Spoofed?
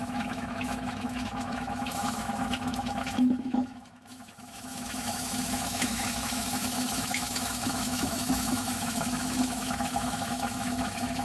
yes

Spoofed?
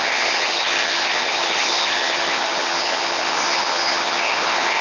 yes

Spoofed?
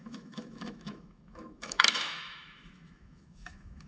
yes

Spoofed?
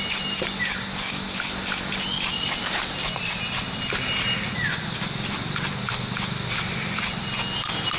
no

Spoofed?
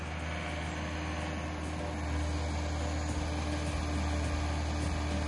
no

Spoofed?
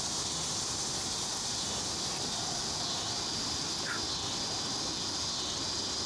no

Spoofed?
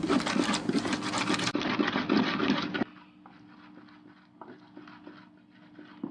no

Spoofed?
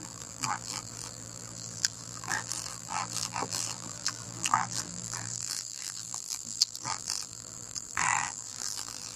yes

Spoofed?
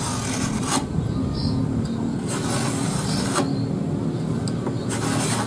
no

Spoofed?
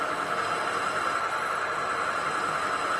no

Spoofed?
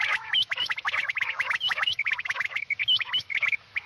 yes